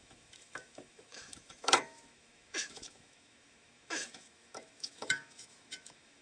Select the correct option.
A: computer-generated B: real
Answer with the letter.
A